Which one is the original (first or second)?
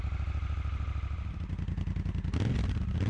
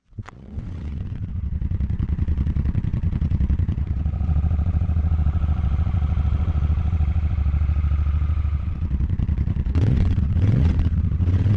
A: first